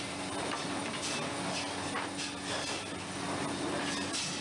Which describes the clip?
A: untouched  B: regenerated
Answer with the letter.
A